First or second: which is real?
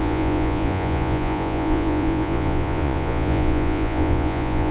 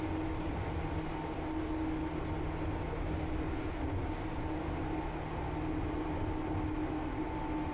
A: second